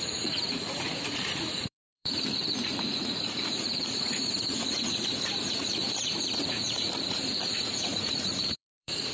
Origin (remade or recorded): remade